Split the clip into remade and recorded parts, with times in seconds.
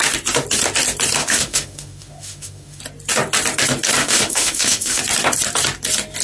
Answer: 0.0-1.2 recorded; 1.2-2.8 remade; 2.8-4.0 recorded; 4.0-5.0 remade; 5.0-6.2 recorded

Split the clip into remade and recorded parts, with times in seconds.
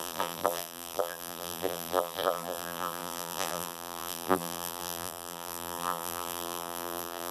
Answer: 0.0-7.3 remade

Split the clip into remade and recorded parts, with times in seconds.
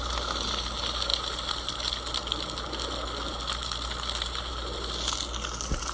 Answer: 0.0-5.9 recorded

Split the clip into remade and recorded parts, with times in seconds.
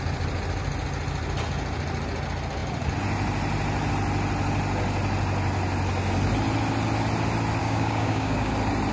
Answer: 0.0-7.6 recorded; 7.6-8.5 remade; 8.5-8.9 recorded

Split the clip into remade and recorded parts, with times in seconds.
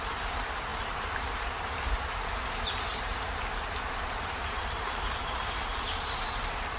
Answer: 0.0-0.7 recorded; 0.7-2.3 remade; 2.3-2.9 recorded; 2.9-6.8 remade